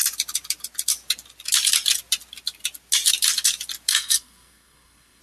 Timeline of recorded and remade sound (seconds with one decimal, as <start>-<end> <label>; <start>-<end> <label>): 0.0-3.9 recorded; 3.9-5.2 remade